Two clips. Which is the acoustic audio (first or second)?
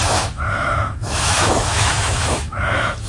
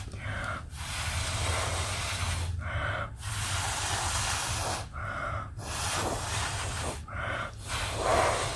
second